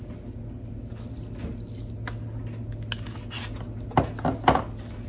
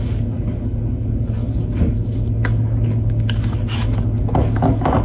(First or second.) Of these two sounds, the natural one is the first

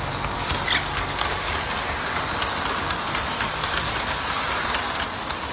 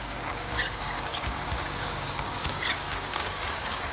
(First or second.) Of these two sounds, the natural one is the first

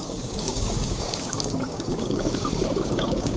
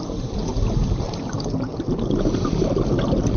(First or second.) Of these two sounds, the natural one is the second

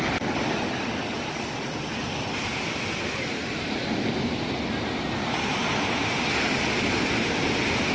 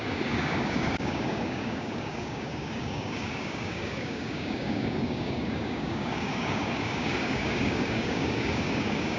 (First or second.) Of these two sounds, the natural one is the first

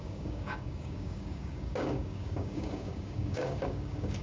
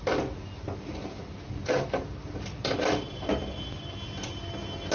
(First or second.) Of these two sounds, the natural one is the second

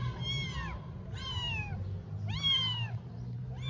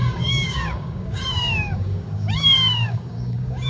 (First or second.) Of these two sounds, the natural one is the first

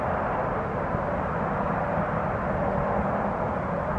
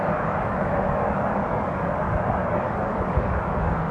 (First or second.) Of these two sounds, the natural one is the first